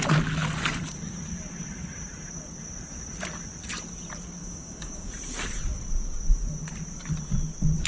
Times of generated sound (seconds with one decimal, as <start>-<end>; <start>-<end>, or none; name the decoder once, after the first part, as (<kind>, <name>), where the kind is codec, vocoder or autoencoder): 4.4-5.1 (codec, DAC)